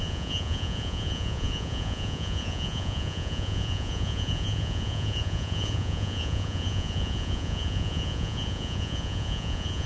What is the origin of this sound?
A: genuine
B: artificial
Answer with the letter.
B